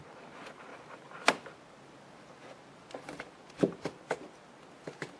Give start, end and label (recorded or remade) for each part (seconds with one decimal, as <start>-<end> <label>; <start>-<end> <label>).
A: 0.0-5.2 recorded